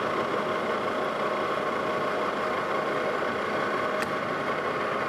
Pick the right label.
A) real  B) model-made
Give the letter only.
A